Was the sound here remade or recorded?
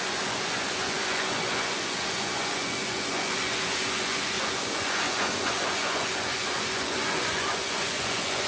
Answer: remade